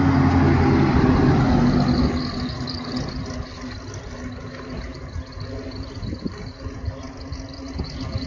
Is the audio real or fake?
real